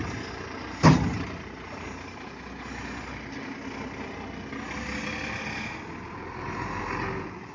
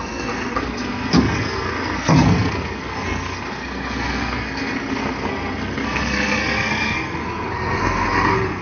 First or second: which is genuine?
first